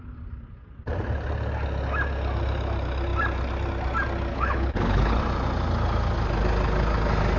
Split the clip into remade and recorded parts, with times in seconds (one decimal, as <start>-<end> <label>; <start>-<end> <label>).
0.0-4.3 recorded; 4.3-5.2 remade; 5.2-7.4 recorded